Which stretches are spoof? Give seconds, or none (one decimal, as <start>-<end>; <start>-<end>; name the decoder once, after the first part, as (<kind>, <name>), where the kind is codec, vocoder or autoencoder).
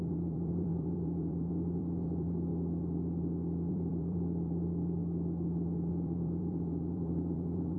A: 0.0-2.5 (vocoder, BigVGAN v2); 3.7-5.0; 5.9-7.8